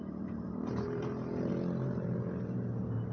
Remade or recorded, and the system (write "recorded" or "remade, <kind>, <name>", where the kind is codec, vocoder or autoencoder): remade, vocoder, BigVGAN v2